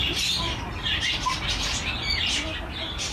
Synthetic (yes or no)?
no